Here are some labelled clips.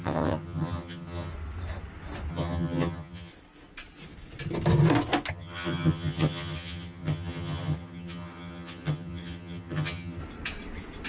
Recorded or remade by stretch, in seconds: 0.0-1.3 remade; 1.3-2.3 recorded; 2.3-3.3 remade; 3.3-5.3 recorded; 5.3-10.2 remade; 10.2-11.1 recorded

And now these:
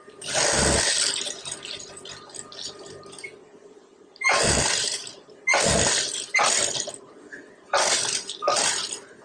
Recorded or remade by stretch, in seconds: 0.0-9.2 recorded

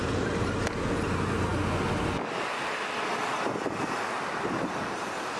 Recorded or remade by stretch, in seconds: 0.0-5.4 recorded

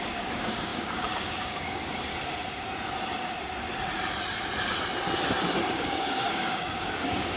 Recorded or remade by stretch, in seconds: 0.0-2.1 remade; 2.1-5.7 recorded; 5.7-7.4 remade

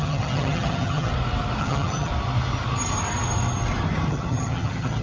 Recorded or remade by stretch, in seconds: 0.0-1.1 remade; 1.1-1.6 recorded; 1.6-2.1 remade; 2.1-4.1 recorded; 4.1-5.0 remade